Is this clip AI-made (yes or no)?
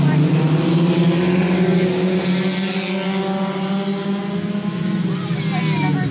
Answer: no